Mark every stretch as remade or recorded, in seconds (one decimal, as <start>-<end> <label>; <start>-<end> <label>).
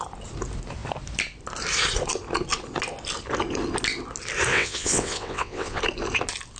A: 0.0-4.5 recorded; 4.5-5.8 remade; 5.8-6.6 recorded